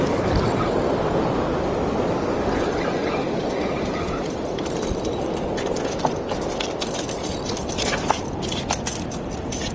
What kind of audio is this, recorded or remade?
recorded